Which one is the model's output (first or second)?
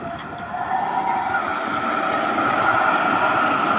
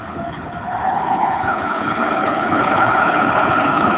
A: second